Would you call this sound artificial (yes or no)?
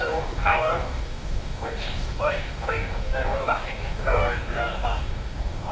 yes